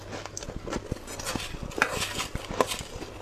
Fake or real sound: real